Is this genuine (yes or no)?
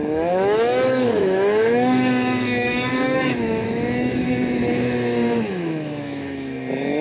no